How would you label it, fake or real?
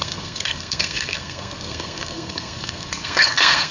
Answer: fake